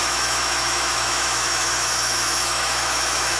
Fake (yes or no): yes